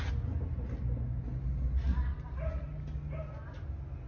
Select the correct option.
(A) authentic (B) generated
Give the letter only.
A